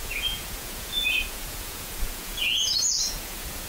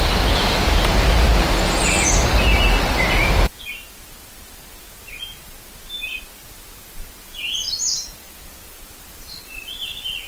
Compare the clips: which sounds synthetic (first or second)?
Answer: first